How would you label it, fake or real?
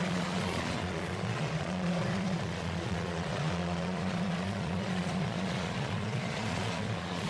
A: fake